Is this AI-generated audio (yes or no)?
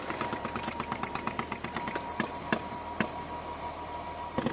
yes